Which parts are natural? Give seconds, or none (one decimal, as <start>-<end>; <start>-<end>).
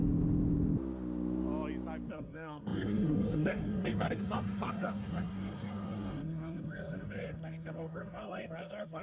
0.0-2.1